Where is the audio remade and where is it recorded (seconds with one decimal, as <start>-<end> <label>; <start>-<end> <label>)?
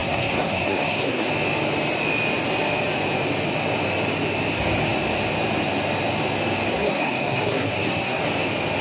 0.0-1.3 remade; 1.3-6.7 recorded; 6.7-8.2 remade; 8.2-8.8 recorded